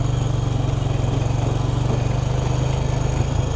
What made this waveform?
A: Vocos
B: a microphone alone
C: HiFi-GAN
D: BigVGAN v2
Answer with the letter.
B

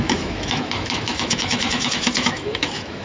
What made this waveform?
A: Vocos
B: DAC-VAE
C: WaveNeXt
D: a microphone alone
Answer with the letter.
B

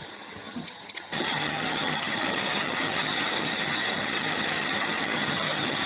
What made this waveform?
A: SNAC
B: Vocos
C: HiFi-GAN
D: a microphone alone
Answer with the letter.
C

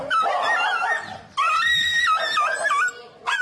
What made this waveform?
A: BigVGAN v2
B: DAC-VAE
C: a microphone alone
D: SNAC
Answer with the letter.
C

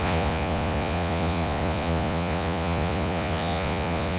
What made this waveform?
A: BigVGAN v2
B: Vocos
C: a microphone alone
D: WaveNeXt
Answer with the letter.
B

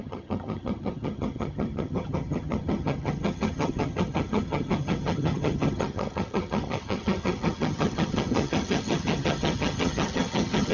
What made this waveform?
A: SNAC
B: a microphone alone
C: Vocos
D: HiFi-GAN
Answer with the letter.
D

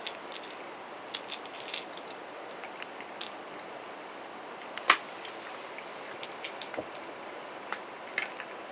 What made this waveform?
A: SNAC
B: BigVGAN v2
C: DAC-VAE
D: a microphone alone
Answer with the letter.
D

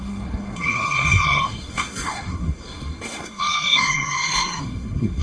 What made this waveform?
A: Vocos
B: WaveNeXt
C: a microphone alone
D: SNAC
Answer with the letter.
D